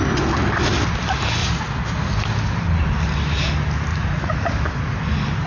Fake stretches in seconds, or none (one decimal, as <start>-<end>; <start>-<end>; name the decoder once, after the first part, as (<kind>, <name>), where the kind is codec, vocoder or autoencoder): 3.9-4.5 (vocoder, Vocos)

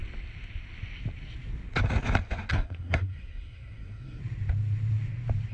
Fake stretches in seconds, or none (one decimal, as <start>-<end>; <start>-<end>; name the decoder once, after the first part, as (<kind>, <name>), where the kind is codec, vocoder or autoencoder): 2.5-4.2 (codec, SNAC)

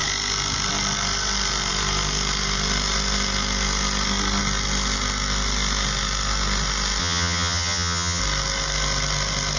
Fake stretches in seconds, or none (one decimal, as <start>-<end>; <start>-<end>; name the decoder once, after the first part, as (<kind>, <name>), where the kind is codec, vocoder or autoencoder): 7.0-8.2 (vocoder, HiFi-GAN)

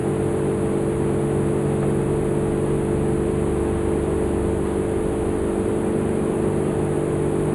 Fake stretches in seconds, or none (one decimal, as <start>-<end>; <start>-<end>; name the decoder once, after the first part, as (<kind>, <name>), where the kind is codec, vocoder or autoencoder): none

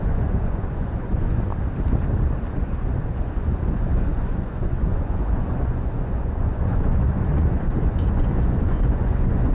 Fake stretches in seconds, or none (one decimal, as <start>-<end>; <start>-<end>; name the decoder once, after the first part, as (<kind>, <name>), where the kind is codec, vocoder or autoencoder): 0.0-1.5 (vocoder, Vocos); 2.5-9.5